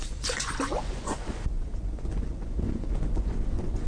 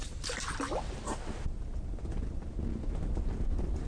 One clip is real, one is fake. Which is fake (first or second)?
first